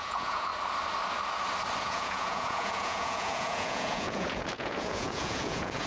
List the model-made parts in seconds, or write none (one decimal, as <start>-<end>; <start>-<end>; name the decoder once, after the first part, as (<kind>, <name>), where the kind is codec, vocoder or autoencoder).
0.0-0.5 (vocoder, Vocos); 1.8-5.9